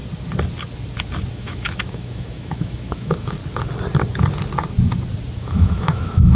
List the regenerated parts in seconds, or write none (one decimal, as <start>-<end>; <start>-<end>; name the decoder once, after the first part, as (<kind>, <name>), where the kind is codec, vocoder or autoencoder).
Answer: 1.3-3.4 (autoencoder, DAC-VAE); 5.4-6.3